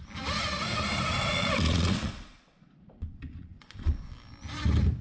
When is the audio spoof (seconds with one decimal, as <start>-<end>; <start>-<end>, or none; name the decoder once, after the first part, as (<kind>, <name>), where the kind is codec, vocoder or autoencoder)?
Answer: 1.3-4.1 (vocoder, Vocos)